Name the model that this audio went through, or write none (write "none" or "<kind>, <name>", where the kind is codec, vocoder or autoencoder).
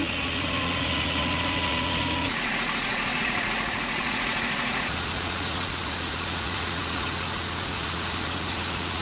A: vocoder, Vocos